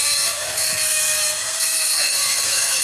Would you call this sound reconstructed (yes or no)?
yes